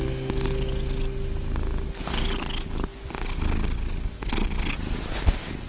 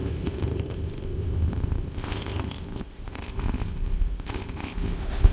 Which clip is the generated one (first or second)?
second